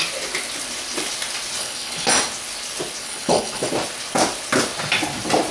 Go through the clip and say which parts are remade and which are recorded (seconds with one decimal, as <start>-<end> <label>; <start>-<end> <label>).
0.0-1.6 recorded; 1.6-2.1 remade; 2.1-3.0 recorded; 3.0-3.7 remade; 3.7-5.5 recorded